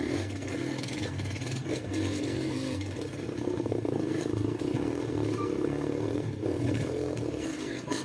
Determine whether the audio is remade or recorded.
remade